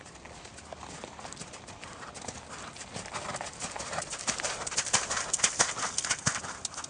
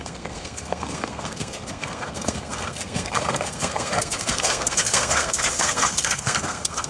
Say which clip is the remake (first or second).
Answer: second